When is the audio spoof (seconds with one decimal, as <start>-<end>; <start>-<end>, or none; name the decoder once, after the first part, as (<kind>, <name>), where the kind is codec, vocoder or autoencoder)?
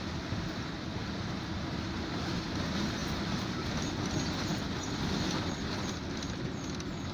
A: 3.0-3.7 (vocoder, BigVGAN v2)